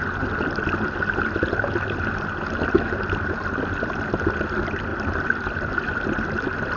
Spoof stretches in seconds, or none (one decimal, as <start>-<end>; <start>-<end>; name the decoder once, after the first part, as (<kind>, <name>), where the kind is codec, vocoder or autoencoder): 4.9-5.7 (vocoder, BigVGAN v2)